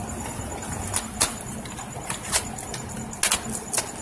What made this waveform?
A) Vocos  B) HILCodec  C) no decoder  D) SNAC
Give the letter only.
C